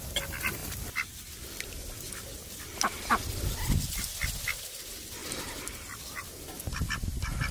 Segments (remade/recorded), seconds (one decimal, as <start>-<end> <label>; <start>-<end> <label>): 0.0-5.2 recorded; 5.2-6.2 remade; 6.2-7.5 recorded